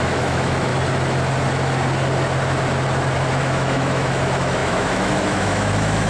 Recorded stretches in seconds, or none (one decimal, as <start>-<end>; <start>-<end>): 0.7-3.4